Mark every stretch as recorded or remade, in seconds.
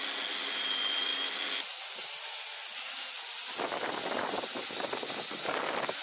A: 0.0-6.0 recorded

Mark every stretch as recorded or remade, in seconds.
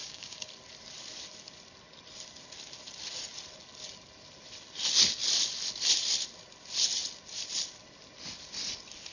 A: 0.0-0.5 remade; 0.5-9.1 recorded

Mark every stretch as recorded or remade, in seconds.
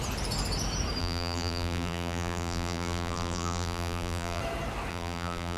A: 0.0-1.0 recorded; 1.0-4.4 remade; 4.4-4.9 recorded; 4.9-5.6 remade